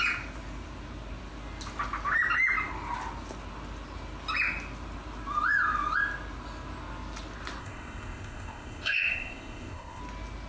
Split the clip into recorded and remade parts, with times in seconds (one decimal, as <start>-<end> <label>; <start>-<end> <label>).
0.0-7.6 recorded; 7.6-10.0 remade; 10.0-10.5 recorded